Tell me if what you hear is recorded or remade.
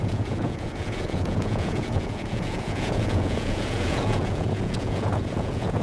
remade